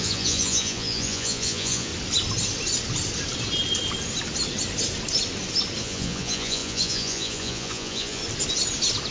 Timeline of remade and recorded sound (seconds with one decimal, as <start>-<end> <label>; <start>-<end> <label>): 0.0-1.9 remade; 1.9-5.8 recorded; 5.8-8.2 remade; 8.2-9.1 recorded